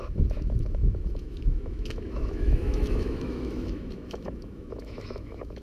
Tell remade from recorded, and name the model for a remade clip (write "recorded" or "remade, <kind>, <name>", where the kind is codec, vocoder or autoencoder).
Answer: remade, autoencoder, DAC-VAE